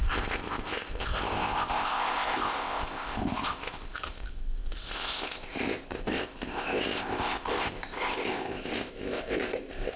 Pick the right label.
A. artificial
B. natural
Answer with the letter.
A